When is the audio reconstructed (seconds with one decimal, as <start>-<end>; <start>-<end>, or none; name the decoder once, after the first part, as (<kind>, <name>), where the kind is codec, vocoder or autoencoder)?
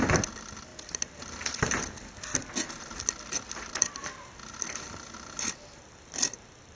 none